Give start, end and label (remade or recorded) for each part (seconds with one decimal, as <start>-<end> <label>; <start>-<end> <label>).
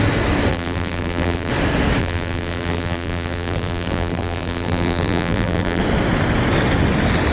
0.0-0.5 recorded; 0.5-1.5 remade; 1.5-2.0 recorded; 2.0-5.8 remade; 5.8-7.3 recorded